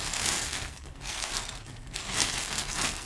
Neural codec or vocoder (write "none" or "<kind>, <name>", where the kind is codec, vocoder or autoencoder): codec, SNAC